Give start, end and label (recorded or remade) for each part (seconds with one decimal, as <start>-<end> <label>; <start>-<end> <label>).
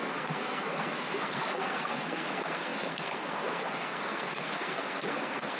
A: 0.0-5.6 remade